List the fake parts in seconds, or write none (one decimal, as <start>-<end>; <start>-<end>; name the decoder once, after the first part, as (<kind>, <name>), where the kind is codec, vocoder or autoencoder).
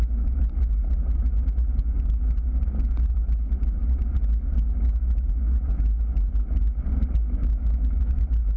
7.4-8.2 (autoencoder, DAC-VAE)